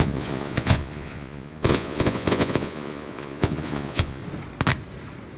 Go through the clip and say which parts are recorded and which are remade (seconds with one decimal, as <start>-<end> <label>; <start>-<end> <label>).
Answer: 0.0-4.2 remade; 4.2-5.4 recorded